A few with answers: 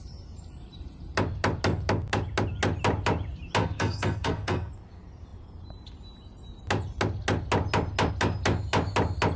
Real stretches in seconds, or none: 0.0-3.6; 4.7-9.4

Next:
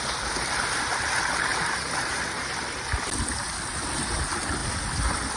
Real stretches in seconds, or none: 0.0-1.5; 2.2-5.4

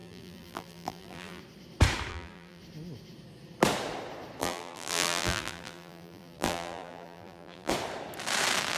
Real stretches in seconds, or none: 1.4-2.1; 2.6-4.4; 7.7-8.8

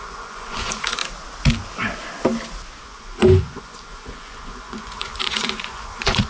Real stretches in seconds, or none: 1.0-2.8

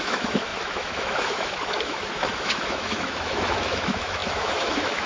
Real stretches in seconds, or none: none

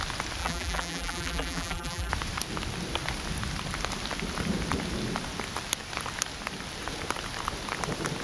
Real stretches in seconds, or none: 0.0-0.4; 2.1-8.2